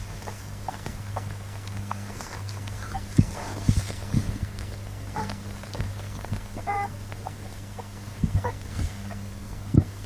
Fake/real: fake